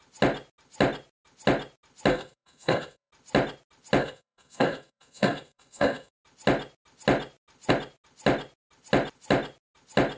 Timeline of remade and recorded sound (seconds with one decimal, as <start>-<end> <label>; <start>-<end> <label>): 0.0-2.1 recorded; 2.1-3.1 remade; 3.1-4.0 recorded; 4.0-6.1 remade; 6.1-10.2 recorded